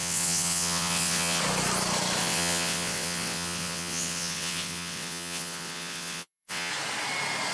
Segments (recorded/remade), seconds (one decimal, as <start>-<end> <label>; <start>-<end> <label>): 0.0-1.4 remade; 1.4-2.2 recorded; 2.2-6.7 remade; 6.7-7.5 recorded